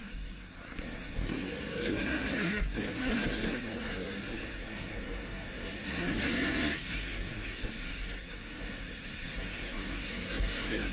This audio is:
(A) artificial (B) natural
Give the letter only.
A